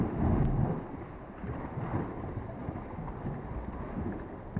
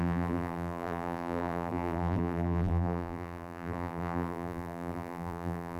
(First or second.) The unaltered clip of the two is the first